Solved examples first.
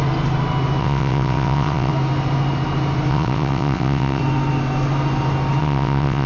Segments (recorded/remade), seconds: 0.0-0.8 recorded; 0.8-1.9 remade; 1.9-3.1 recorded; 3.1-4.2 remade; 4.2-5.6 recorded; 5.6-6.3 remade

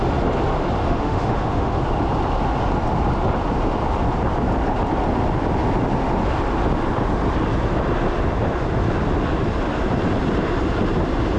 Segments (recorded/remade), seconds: 0.0-0.8 recorded; 0.8-1.8 remade; 1.8-11.4 recorded

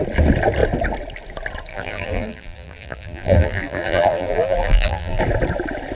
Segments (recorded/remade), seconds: 0.0-1.7 recorded; 1.7-5.2 remade; 5.2-5.9 recorded

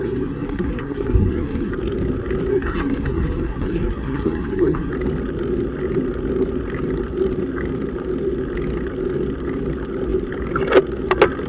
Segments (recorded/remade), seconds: 0.0-1.7 remade; 1.7-2.5 recorded; 2.5-4.9 remade; 4.9-11.5 recorded

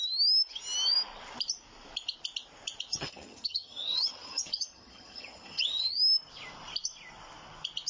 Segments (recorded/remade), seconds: 0.0-2.9 recorded; 2.9-6.0 remade; 6.0-7.9 recorded

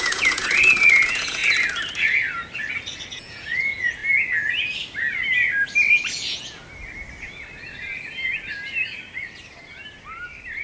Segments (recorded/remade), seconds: 0.0-1.4 remade; 1.4-3.1 recorded; 3.1-4.0 remade; 4.0-6.1 recorded; 6.1-6.6 remade; 6.6-10.6 recorded